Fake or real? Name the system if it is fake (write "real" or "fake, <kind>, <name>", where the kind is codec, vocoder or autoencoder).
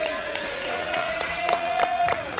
fake, vocoder, Vocos